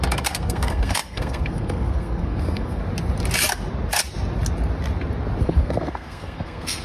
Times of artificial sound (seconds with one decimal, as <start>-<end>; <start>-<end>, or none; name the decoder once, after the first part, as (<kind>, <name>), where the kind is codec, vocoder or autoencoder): 0.0-2.8 (codec, SNAC); 5.4-6.8